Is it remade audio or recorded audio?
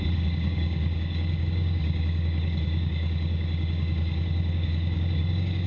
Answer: remade